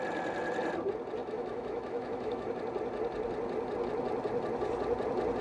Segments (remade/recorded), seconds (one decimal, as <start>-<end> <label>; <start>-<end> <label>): 0.0-1.2 recorded; 1.2-2.5 remade; 2.5-5.4 recorded